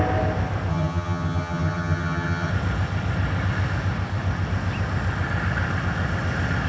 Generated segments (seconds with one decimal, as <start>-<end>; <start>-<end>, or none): 0.7-2.5